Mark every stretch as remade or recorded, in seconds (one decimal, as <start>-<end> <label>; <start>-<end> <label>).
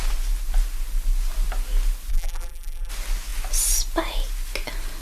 0.0-2.1 recorded; 2.1-2.9 remade; 2.9-5.0 recorded